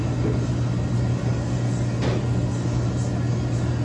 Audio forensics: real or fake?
real